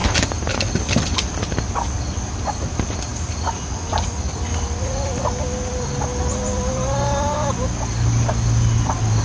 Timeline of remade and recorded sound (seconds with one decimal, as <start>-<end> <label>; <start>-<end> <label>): 0.0-9.2 recorded